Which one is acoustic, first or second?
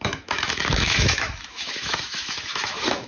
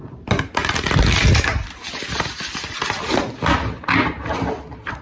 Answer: second